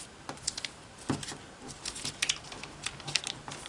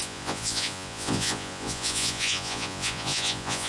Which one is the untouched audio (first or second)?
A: first